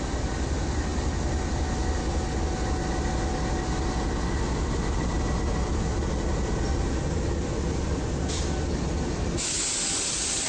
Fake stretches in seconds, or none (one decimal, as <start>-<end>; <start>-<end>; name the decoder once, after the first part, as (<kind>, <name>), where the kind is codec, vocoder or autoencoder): none